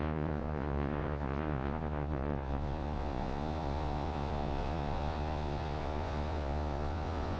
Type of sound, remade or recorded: remade